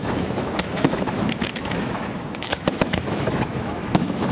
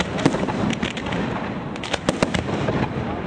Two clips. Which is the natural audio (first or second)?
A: second